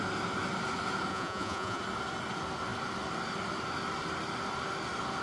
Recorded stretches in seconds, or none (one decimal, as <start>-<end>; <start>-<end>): 0.0-1.1; 1.8-5.2